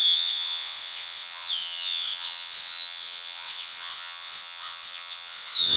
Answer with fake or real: fake